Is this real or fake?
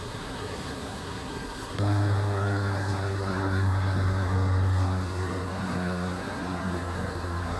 fake